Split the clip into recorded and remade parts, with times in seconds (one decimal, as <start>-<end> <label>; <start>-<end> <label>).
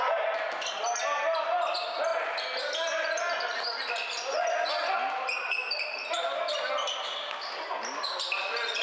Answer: 0.0-5.6 recorded; 5.6-6.4 remade; 6.4-8.8 recorded